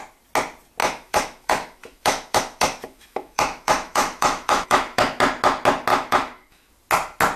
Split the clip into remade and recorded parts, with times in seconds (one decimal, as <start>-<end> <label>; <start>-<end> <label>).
0.0-0.8 recorded; 0.8-5.2 remade; 5.2-5.9 recorded; 5.9-6.7 remade; 6.7-7.4 recorded

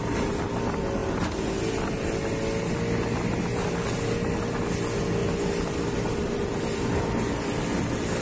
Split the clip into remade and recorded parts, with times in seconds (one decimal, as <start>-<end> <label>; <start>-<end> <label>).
0.0-8.2 recorded